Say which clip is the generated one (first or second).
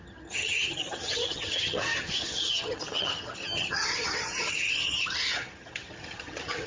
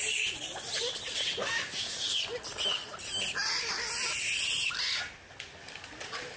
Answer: first